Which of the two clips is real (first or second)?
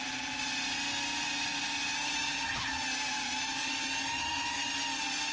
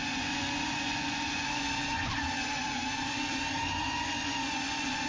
first